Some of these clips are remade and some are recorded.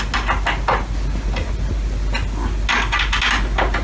recorded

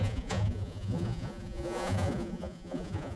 remade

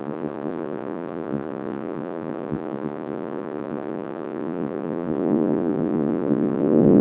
remade